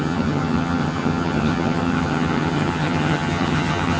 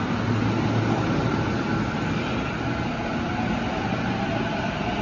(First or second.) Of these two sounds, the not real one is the first